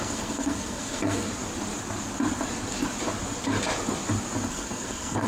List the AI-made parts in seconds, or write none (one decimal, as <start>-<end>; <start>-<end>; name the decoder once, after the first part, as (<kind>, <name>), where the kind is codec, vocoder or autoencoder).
0.0-1.3 (codec, SNAC); 4.5-5.3